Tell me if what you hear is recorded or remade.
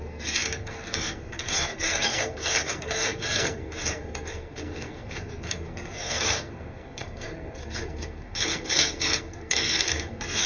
remade